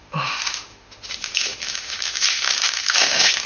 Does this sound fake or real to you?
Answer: fake